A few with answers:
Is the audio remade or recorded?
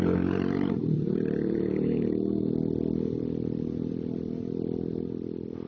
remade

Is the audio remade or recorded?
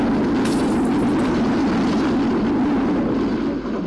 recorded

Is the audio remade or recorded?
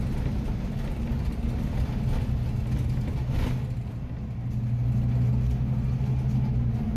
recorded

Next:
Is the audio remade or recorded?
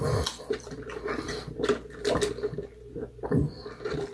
recorded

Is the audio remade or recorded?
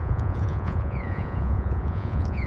remade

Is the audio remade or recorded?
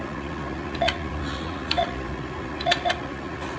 remade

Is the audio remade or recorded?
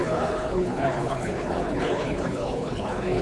remade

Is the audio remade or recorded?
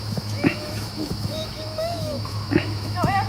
remade